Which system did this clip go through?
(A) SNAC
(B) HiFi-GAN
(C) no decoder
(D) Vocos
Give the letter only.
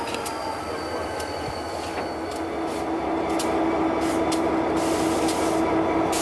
C